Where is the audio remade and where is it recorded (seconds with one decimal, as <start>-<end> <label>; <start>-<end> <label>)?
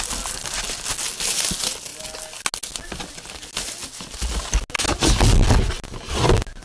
0.0-6.6 recorded